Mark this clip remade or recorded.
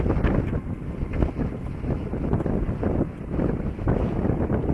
recorded